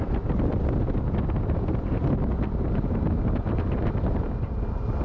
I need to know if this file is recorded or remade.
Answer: recorded